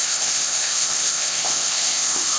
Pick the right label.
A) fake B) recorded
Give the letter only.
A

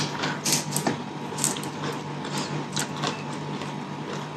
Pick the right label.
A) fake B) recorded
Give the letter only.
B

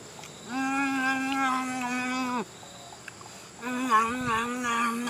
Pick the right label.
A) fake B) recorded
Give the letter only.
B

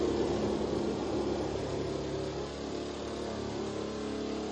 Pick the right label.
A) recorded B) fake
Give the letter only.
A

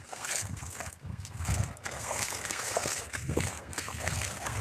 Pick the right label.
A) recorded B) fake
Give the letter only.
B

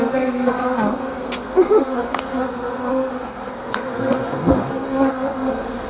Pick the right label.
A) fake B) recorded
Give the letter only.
A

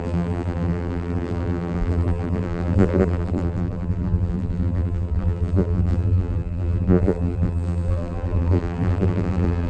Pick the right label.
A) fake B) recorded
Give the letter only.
A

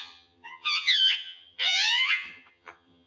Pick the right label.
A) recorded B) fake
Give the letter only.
B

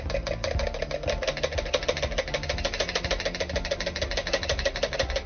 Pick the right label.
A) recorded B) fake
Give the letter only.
A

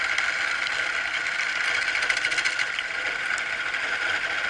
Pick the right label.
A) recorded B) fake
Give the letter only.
A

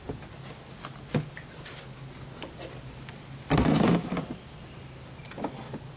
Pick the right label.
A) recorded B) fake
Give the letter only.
A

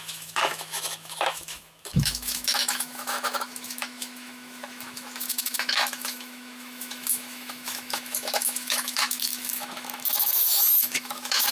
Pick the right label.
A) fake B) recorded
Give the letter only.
A